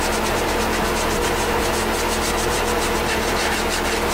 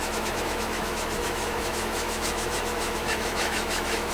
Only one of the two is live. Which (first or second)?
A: first